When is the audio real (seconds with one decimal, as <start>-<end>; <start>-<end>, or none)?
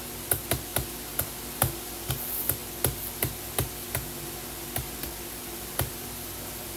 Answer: 0.0-6.8